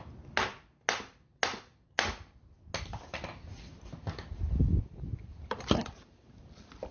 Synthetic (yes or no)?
no